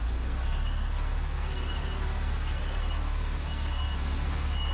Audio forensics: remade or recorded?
remade